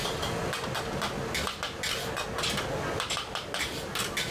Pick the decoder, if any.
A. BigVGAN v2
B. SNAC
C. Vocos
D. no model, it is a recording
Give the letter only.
D